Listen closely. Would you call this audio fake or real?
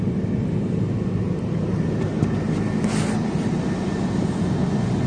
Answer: real